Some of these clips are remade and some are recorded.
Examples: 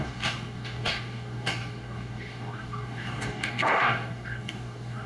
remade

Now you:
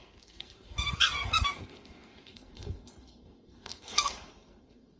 remade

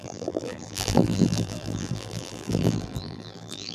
remade